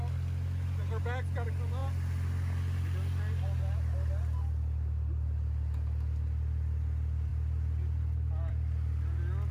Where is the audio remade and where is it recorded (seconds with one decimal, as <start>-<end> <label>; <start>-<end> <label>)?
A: 0.0-9.5 recorded